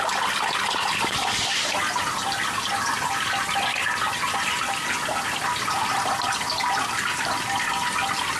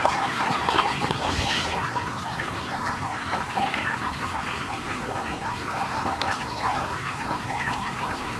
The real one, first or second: first